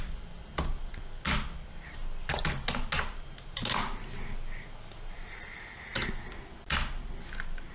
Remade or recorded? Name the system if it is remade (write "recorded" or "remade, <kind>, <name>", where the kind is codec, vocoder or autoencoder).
recorded